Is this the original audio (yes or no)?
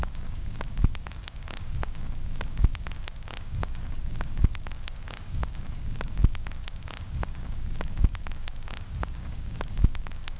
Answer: no